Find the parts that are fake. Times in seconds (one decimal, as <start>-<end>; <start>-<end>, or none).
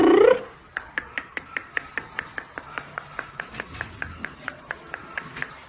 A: none